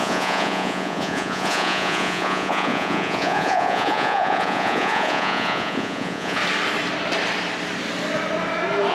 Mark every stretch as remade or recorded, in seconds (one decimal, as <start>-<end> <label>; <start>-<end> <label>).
0.0-6.4 remade; 6.4-8.9 recorded